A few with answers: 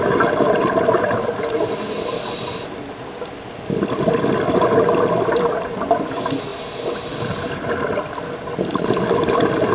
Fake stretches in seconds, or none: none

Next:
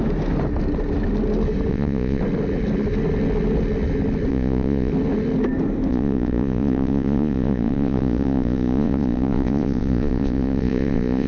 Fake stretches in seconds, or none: 1.7-2.2 (vocoder, Vocos); 4.3-4.9; 5.9-11.3

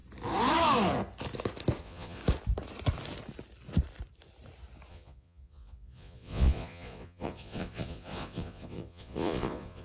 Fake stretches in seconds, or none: 1.8-2.2 (vocoder, Vocos); 4.9-9.8

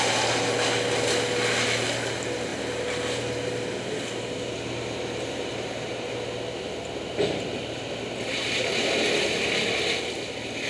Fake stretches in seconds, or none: none

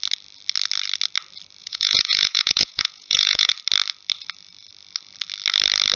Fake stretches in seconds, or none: 1.6-3.5 (vocoder, Vocos)

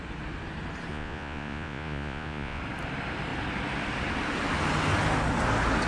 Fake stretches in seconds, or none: 0.9-2.6 (vocoder, Vocos)